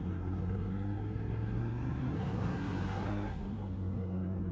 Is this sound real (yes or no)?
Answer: no